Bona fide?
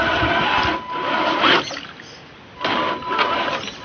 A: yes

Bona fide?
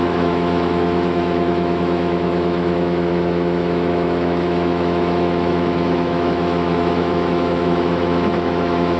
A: no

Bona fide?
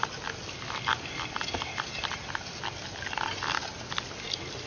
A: yes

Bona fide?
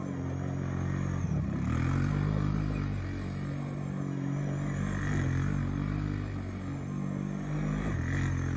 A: yes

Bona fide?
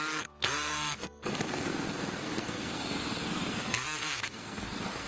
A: no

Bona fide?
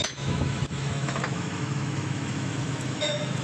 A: no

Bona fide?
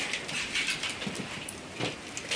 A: yes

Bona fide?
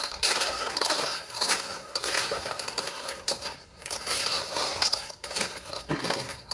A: no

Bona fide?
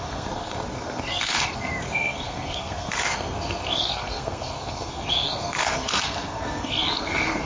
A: no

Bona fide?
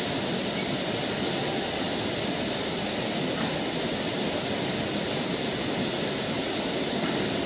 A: yes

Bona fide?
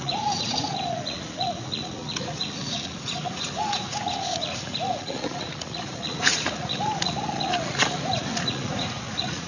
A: no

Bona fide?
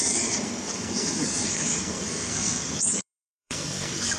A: no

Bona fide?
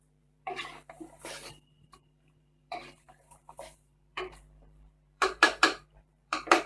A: no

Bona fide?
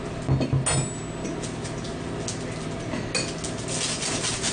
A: yes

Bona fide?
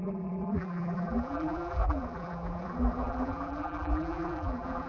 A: no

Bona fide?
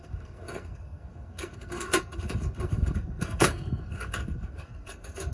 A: no